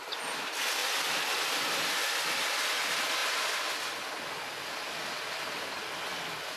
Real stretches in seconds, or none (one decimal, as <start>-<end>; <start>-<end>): 0.0-6.6